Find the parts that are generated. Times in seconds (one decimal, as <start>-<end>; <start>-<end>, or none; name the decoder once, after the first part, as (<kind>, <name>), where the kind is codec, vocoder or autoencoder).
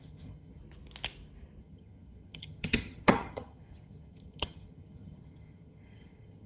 0.0-0.6 (vocoder, HiFi-GAN); 1.6-6.5